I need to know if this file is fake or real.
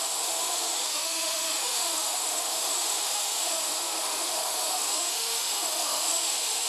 fake